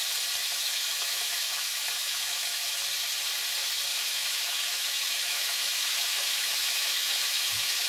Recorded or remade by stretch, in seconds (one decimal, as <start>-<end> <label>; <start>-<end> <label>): 0.0-0.4 recorded; 0.4-2.8 remade; 2.8-3.9 recorded; 3.9-7.9 remade